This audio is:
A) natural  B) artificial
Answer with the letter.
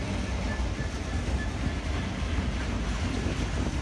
A